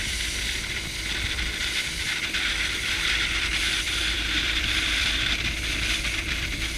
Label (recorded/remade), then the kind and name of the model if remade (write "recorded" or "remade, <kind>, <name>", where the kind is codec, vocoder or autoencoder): remade, vocoder, BigVGAN v2